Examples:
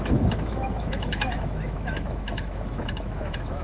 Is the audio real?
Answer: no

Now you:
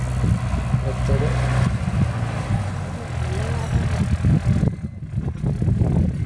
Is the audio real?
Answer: yes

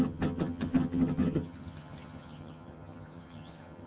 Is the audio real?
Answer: no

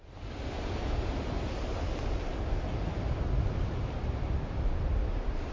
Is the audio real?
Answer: yes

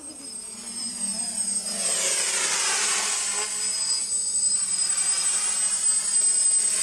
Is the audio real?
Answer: yes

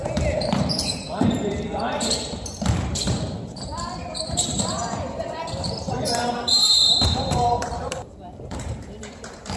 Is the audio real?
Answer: no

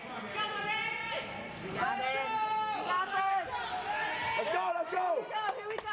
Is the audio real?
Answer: yes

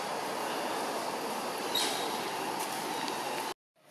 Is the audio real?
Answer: yes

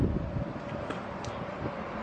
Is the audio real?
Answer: yes